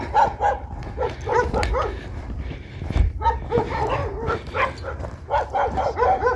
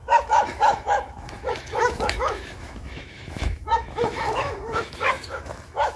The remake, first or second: second